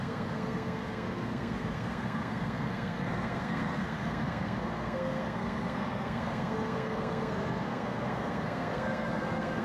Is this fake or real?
fake